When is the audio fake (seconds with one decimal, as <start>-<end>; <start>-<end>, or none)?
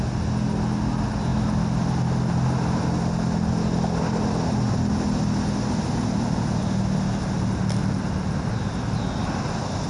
none